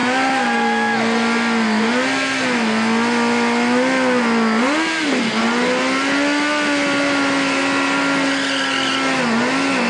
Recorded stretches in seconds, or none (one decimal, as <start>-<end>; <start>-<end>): 0.0-9.9